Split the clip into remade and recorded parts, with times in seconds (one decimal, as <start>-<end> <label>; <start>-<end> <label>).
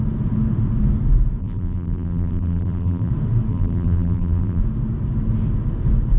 0.0-1.4 recorded; 1.4-3.1 remade; 3.1-3.5 recorded; 3.5-4.6 remade; 4.6-6.2 recorded